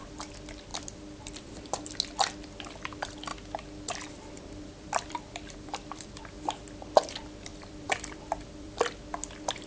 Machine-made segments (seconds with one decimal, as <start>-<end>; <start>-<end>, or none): 0.7-1.6; 3.3-6.2; 7.5-8.9